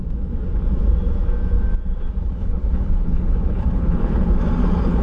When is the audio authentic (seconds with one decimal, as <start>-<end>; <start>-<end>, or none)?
0.0-2.2; 4.2-5.0